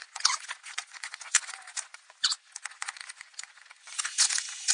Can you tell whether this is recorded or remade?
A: remade